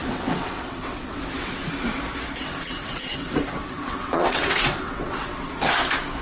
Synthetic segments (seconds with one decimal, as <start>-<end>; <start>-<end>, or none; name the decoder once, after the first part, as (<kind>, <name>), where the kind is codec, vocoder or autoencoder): 0.0-1.6 (vocoder, WaveNeXt); 2.4-5.5

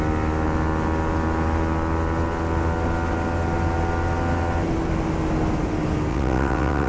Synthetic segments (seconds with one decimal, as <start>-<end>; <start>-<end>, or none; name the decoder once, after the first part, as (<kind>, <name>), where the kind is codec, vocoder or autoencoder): 6.1-6.9 (vocoder, WaveNeXt)

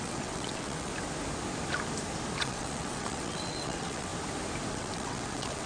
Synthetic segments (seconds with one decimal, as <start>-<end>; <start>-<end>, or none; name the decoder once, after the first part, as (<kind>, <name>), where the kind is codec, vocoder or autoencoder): 0.0-0.9 (vocoder, WaveNeXt); 2.4-4.1; 4.7-5.7